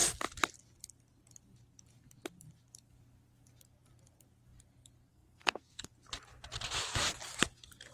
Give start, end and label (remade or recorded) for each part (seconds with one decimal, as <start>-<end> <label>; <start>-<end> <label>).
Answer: 0.0-5.1 recorded; 5.1-5.9 remade; 5.9-7.9 recorded